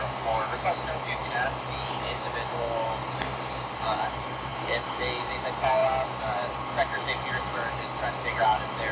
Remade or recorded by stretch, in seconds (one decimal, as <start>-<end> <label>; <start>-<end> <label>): 0.0-8.9 recorded